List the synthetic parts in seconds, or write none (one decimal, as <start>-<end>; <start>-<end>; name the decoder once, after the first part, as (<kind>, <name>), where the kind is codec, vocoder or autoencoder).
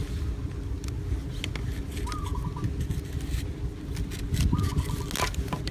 none